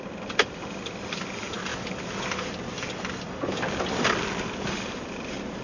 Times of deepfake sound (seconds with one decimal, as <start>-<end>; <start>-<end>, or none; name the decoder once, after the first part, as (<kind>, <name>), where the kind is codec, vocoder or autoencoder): 0.0-1.7 (vocoder, BigVGAN v2); 5.1-5.6